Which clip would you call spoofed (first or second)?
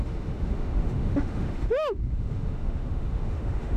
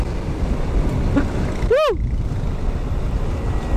first